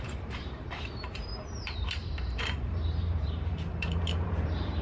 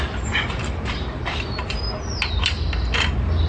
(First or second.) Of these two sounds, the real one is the second